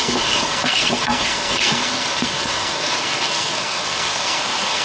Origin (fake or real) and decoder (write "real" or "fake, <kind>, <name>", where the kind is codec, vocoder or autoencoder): fake, codec, SNAC